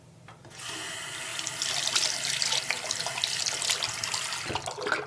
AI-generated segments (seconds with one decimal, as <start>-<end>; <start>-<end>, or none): none